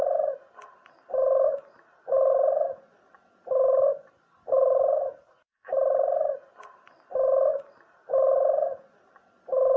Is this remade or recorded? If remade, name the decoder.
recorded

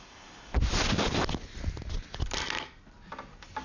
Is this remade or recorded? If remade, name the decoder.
recorded